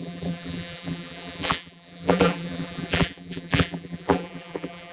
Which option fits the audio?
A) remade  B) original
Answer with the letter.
A